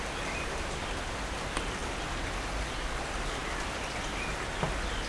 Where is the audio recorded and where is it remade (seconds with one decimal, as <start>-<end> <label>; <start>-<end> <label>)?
0.0-5.1 recorded